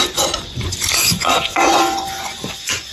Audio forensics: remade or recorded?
remade